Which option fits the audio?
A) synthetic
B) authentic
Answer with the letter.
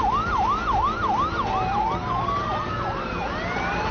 B